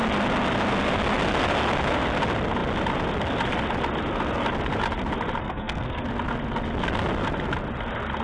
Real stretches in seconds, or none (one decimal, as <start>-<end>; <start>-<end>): 0.0-5.4; 6.0-8.2